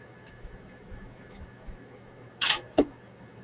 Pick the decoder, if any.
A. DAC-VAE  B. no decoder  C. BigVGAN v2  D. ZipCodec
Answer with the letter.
A